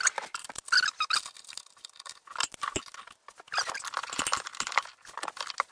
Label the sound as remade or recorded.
recorded